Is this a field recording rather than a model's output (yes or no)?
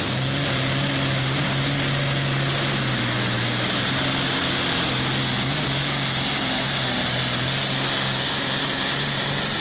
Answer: yes